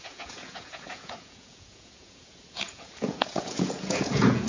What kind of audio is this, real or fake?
fake